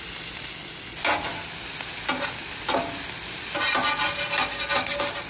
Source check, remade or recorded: recorded